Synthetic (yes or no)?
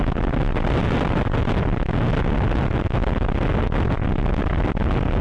no